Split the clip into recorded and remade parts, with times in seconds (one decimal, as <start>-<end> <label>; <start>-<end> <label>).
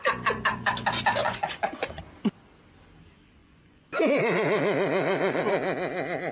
0.0-1.2 recorded; 1.2-2.0 remade; 2.0-3.4 recorded; 3.4-5.4 remade; 5.4-6.3 recorded